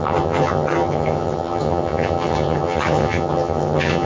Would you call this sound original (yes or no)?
no